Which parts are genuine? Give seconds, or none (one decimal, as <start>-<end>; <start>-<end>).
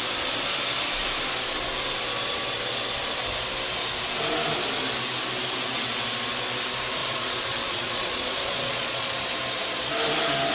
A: 0.0-7.0; 9.2-10.5